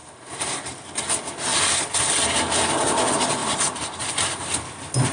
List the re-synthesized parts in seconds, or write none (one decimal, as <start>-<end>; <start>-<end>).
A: 0.0-1.0; 1.5-2.1; 3.4-4.6